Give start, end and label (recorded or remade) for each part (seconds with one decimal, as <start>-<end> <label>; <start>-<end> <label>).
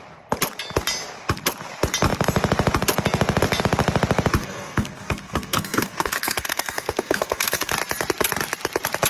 0.0-4.4 recorded; 4.4-7.7 remade; 7.7-9.1 recorded